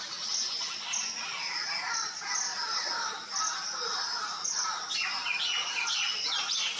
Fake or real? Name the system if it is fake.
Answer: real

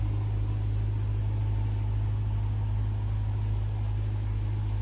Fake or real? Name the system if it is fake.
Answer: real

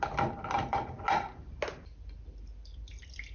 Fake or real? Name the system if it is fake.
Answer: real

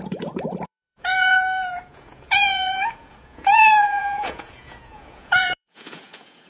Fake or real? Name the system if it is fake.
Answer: fake, vocoder, Vocos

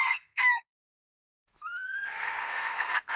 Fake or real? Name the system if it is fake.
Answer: fake, codec, SNAC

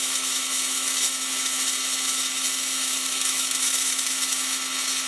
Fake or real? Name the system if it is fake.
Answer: fake, autoencoder, DAC-VAE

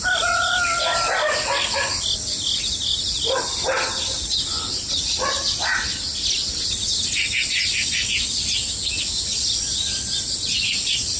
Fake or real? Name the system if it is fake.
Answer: real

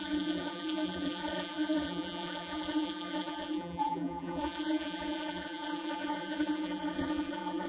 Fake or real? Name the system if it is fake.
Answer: fake, vocoder, BigVGAN v2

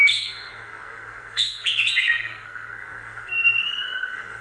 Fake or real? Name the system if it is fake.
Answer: fake, codec, SNAC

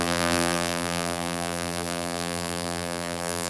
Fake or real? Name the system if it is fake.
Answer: fake, vocoder, BigVGAN v2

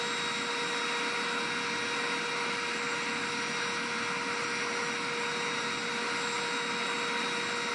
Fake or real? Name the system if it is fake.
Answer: real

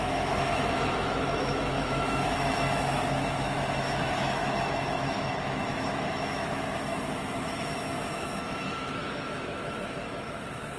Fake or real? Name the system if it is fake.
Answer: fake, autoencoder, DAC-VAE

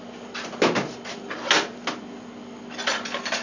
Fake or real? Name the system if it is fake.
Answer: real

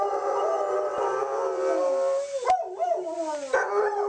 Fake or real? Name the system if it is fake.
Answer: real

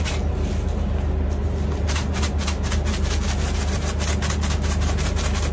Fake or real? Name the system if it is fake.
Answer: real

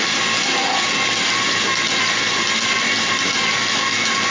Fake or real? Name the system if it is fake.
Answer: real